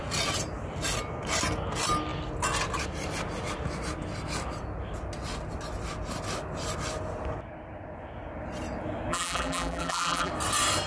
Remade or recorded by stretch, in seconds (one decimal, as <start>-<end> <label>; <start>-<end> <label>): 0.0-9.1 recorded; 9.1-10.3 remade; 10.3-10.9 recorded